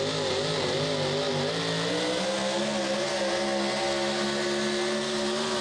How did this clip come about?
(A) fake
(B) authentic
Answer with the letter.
B